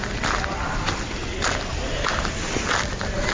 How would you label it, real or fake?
real